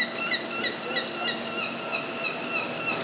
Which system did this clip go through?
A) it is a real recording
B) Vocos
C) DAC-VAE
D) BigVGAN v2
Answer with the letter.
A